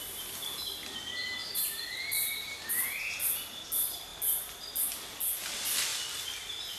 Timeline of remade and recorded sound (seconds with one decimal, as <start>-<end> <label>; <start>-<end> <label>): 0.0-1.4 recorded; 1.4-3.3 remade; 3.3-6.8 recorded